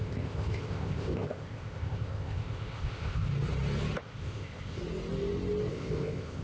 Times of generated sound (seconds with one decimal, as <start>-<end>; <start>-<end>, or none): 0.0-3.3; 4.0-4.8; 5.7-6.4